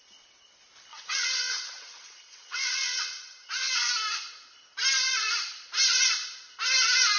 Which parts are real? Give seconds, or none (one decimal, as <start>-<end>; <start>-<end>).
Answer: 0.0-0.9; 3.9-7.2